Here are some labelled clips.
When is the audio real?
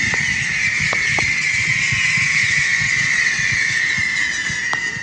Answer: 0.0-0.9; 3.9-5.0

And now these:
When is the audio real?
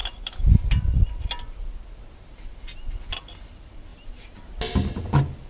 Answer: 0.0-5.5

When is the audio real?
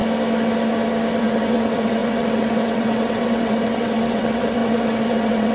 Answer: 0.0-1.2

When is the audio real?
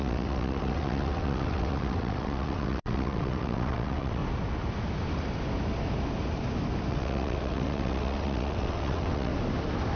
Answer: 4.2-6.9; 9.3-10.0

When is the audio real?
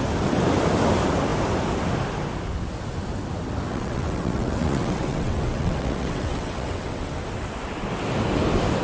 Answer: 0.0-3.7; 7.1-8.8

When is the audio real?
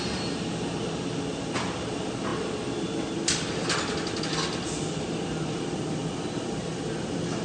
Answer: 0.0-7.4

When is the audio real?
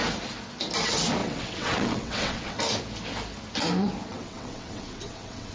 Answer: 0.0-1.2; 2.6-4.1